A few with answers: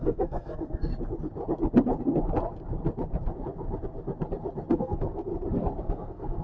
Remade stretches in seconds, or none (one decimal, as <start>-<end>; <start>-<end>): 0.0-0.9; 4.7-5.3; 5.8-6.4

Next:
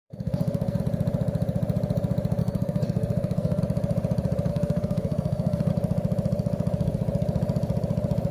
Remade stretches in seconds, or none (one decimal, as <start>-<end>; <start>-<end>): 0.0-0.8; 2.4-3.6; 4.5-5.7

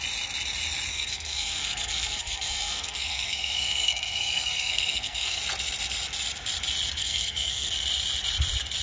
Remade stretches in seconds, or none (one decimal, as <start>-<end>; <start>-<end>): 0.9-5.4; 7.0-7.7

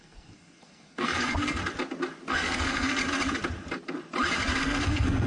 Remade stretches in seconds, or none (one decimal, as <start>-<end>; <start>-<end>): 0.0-1.6; 2.3-3.0; 4.6-5.3

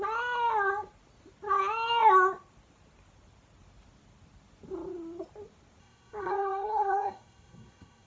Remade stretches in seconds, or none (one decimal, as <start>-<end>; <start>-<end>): 5.8-8.1

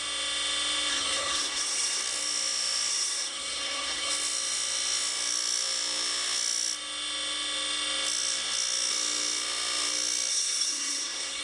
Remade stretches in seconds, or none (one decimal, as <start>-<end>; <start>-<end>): 0.9-2.0; 2.9-4.1; 10.3-11.4